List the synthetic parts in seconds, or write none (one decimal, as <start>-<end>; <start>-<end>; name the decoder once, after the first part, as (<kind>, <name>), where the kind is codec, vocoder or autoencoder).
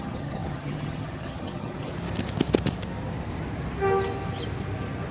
0.0-1.9 (vocoder, HiFi-GAN)